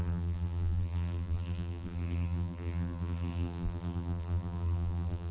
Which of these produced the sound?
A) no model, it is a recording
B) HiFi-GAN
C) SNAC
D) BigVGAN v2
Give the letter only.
D